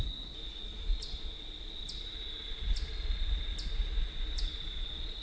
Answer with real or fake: real